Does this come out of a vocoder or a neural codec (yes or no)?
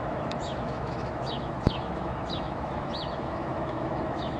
yes